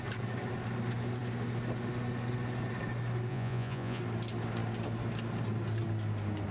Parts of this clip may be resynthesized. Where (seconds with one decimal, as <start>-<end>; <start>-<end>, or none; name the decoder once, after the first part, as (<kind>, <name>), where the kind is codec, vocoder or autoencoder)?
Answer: 3.3-4.0 (vocoder, Vocos)